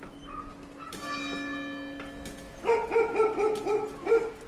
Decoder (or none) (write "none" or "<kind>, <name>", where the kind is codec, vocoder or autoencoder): none